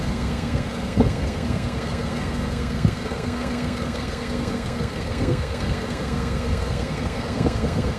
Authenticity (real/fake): fake